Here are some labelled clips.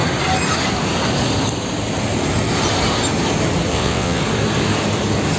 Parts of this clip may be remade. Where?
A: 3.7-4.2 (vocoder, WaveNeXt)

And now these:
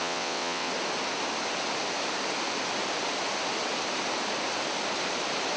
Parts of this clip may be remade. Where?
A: 0.0-0.7 (vocoder, WaveNeXt)

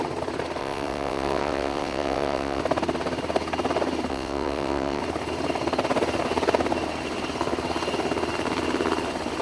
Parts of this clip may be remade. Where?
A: 0.6-2.6 (vocoder, WaveNeXt); 4.1-5.0

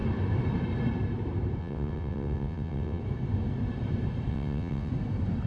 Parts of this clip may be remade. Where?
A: 1.6-3.0 (vocoder, WaveNeXt); 4.3-4.9

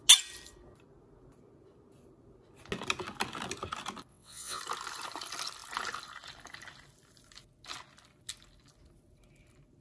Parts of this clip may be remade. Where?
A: 4.1-4.6 (vocoder, WaveNeXt)

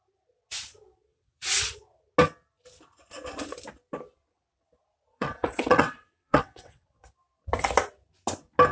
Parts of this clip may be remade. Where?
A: 1.1-1.7 (vocoder, WaveNeXt); 5.1-7.1

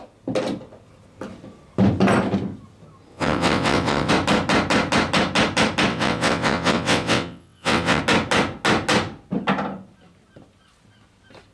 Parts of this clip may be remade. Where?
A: 3.1-4.1 (vocoder, WaveNeXt); 5.9-8.0